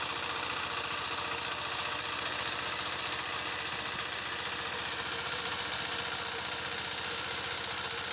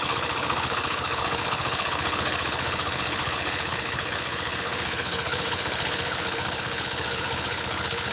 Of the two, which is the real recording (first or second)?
first